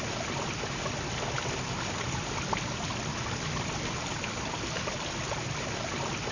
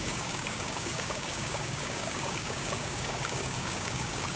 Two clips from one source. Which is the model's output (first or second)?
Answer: second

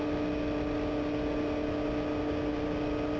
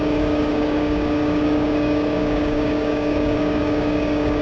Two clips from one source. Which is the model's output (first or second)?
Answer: second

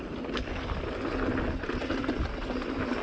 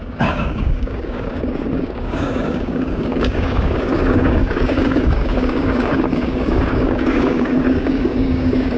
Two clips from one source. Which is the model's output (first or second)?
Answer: second